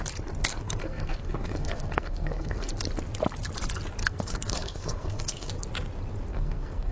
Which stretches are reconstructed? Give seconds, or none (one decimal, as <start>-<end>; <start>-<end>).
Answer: 0.4-2.7; 4.0-5.5; 6.3-6.9